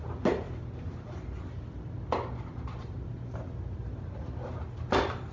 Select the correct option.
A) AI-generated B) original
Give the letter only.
B